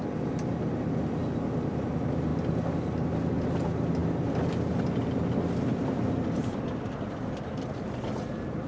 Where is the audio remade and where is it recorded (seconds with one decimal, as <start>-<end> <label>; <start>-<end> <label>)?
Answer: 0.0-8.7 recorded